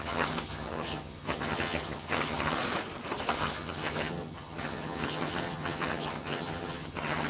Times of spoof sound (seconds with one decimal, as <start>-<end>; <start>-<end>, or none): 0.0-2.6; 3.3-7.3